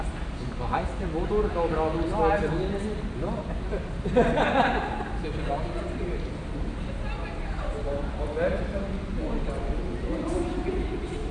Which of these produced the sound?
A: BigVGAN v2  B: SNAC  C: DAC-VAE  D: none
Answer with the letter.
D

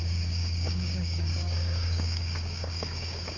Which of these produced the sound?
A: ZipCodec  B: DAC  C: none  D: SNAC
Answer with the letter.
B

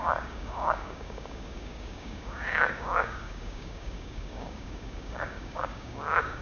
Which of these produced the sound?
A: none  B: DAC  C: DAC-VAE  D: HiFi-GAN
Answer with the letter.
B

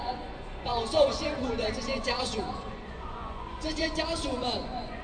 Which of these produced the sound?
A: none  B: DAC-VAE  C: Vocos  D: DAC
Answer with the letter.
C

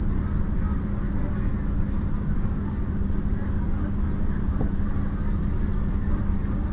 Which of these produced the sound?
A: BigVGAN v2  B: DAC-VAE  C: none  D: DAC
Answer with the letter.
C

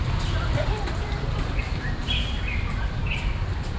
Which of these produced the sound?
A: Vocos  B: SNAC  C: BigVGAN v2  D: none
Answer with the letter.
C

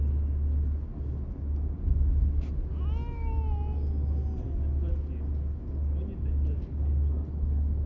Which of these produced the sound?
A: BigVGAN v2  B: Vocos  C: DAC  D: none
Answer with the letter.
D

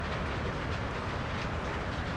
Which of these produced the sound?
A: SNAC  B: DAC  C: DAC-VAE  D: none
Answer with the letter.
D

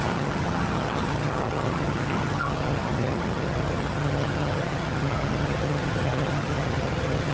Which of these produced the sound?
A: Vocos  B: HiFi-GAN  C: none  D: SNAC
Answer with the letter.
B